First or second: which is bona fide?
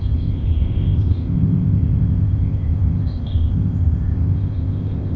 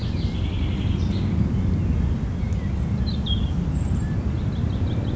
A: second